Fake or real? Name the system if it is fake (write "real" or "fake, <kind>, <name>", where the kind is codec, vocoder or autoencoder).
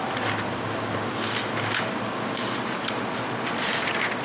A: real